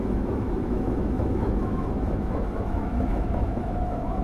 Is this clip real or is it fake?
fake